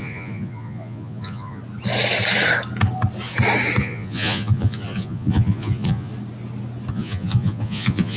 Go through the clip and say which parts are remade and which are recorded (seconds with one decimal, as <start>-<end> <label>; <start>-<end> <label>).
0.0-1.6 remade; 1.6-3.8 recorded; 3.8-6.1 remade; 6.1-6.9 recorded; 6.9-8.2 remade